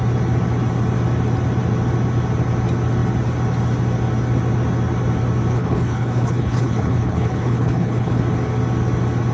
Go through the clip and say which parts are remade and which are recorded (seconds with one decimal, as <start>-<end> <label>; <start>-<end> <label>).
0.0-5.5 recorded; 5.5-8.2 remade; 8.2-9.3 recorded